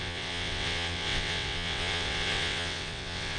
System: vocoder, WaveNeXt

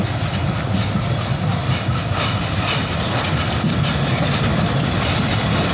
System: none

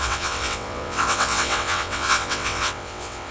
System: vocoder, WaveNeXt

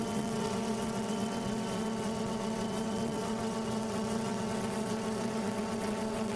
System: vocoder, WaveNeXt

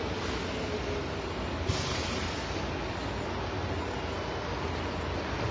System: none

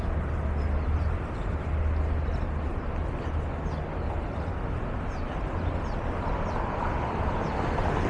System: none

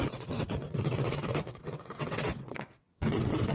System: vocoder, WaveNeXt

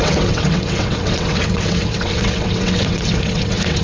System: vocoder, WaveNeXt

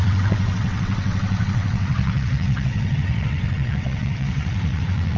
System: vocoder, WaveNeXt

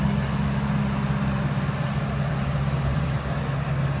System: none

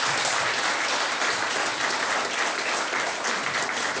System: none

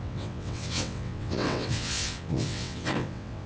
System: vocoder, WaveNeXt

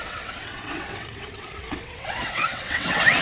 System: vocoder, WaveNeXt